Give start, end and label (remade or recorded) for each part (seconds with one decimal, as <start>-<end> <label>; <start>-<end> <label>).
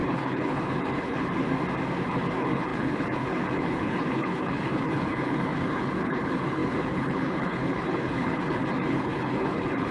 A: 0.0-1.4 remade; 1.4-2.1 recorded; 2.1-9.9 remade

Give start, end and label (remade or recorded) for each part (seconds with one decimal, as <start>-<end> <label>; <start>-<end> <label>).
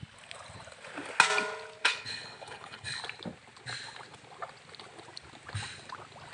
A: 0.0-1.8 recorded; 1.8-3.0 remade; 3.0-6.3 recorded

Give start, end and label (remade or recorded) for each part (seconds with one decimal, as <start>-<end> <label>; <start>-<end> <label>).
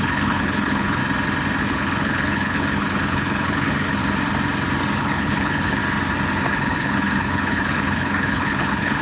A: 0.0-1.0 remade; 1.0-1.6 recorded; 1.6-4.0 remade; 4.0-5.0 recorded; 5.0-5.8 remade; 5.8-6.5 recorded; 6.5-9.0 remade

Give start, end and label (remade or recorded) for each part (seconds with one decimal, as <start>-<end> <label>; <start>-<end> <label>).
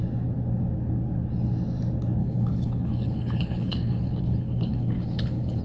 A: 0.0-2.2 recorded; 2.2-5.6 remade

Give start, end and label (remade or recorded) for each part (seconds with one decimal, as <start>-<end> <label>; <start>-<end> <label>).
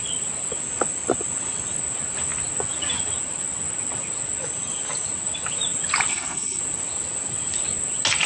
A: 0.0-6.1 recorded; 6.1-6.6 remade; 6.6-8.3 recorded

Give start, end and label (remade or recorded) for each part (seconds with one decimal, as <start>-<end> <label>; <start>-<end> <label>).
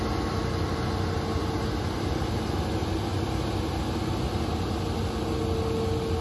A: 0.0-6.2 recorded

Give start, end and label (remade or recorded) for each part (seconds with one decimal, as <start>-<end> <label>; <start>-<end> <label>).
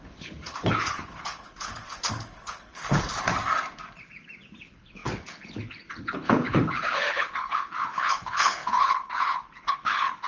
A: 0.0-3.3 remade; 3.3-4.6 recorded; 4.6-10.3 remade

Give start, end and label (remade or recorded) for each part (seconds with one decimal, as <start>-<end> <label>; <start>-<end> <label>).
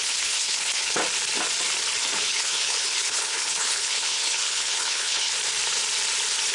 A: 0.0-1.0 remade; 1.0-2.2 recorded; 2.2-5.3 remade; 5.3-6.5 recorded